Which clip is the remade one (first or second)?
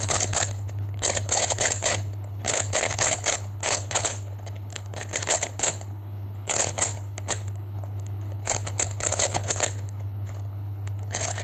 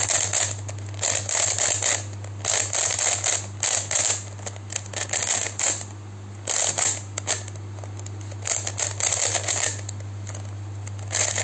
first